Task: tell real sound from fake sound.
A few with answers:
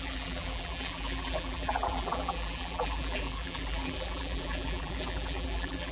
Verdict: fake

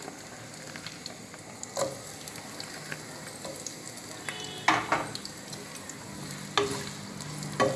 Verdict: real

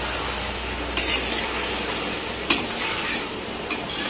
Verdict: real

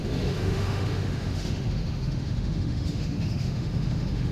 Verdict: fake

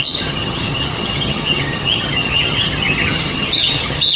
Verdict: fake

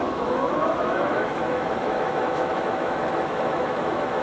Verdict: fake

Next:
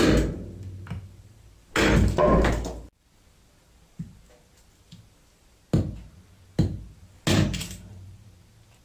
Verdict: real